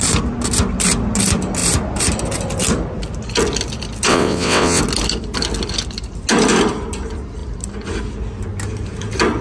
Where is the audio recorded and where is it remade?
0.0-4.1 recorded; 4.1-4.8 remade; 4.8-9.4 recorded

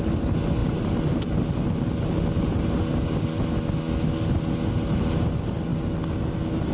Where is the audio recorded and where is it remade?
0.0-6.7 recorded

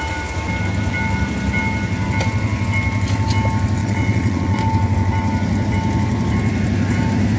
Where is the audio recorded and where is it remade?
0.0-3.8 recorded; 3.8-4.6 remade; 4.6-7.4 recorded